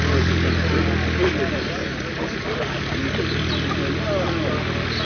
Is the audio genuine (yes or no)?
yes